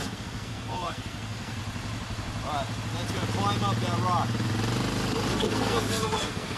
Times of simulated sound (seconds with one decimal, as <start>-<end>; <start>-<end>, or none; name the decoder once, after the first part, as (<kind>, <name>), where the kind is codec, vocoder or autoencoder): 0.0-1.6 (codec, SNAC); 5.3-6.6